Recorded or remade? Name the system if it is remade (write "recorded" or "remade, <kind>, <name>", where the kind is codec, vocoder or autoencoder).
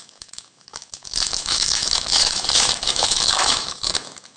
remade, autoencoder, DAC-VAE